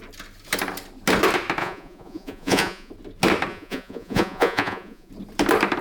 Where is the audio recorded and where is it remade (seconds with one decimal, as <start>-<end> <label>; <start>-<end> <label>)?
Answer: 0.0-1.6 recorded; 1.6-2.9 remade; 2.9-3.5 recorded; 3.5-5.1 remade; 5.1-5.8 recorded